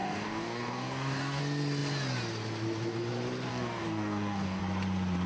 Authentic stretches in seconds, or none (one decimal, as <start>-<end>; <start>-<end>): 1.4-3.5; 4.6-5.3